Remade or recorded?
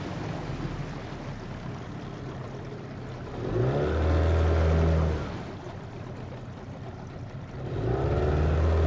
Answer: recorded